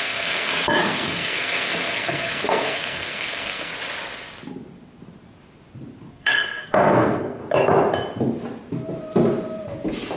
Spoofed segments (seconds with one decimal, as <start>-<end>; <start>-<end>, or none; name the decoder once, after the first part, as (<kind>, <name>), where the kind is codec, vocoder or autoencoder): 0.0-3.7 (codec, SNAC); 6.1-7.4